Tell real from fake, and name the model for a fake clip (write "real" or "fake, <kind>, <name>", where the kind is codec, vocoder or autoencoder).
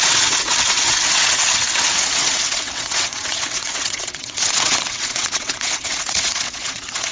fake, vocoder, WaveNeXt